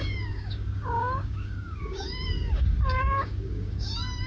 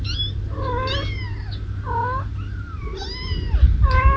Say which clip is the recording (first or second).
second